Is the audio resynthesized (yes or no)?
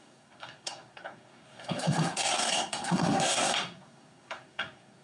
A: yes